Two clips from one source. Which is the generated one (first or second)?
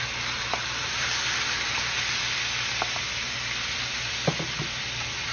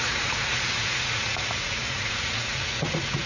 second